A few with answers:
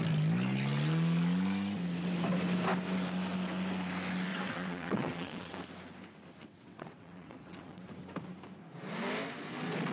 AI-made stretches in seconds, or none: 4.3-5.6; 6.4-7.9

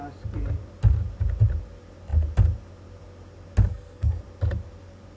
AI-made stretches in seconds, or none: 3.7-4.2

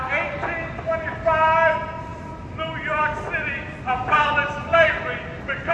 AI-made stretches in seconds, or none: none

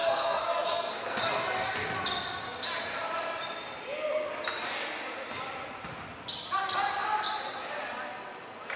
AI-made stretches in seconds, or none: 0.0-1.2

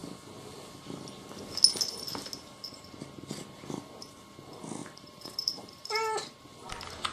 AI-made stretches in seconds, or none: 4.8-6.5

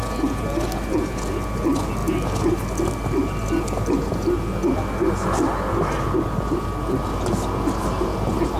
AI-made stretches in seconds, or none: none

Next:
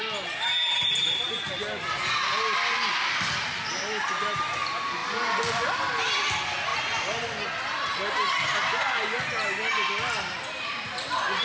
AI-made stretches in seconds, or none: none

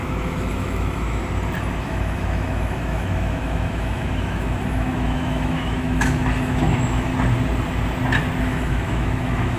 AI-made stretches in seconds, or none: 0.0-1.2; 1.8-7.1; 8.4-9.6